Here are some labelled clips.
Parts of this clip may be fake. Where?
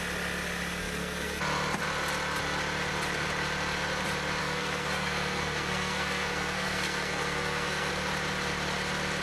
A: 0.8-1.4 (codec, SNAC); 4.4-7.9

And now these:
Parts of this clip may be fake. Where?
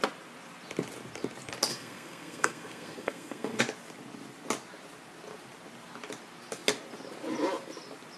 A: 1.7-3.6 (codec, SNAC)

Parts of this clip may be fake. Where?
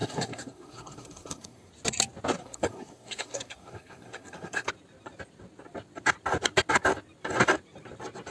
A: 0.0-1.7 (codec, SNAC); 2.4-4.7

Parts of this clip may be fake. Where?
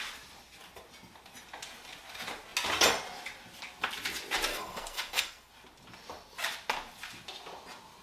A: 4.5-5.5 (codec, SNAC)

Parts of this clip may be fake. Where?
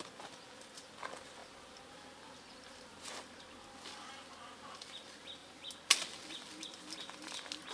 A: none